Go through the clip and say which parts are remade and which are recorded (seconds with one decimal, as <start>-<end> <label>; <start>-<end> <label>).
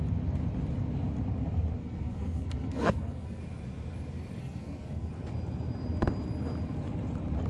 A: 0.0-1.8 recorded; 1.8-3.4 remade; 3.4-4.4 recorded; 4.4-5.1 remade; 5.1-7.5 recorded